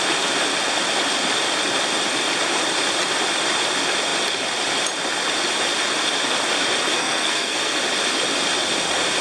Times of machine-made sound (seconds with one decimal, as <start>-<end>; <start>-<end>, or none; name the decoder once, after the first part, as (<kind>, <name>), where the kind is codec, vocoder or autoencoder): 6.9-7.8 (codec, SNAC)